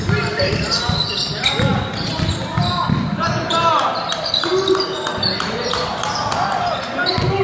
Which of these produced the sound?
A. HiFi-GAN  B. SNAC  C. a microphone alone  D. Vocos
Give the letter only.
C